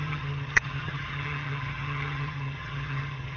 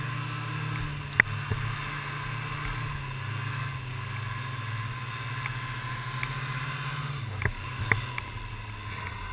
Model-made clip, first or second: first